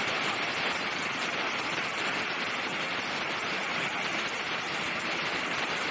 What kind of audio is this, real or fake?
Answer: fake